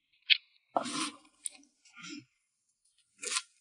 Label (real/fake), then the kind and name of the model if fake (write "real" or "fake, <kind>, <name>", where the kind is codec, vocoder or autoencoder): real